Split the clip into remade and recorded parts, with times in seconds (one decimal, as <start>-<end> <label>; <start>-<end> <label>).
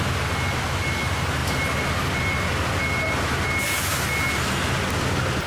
0.0-5.5 recorded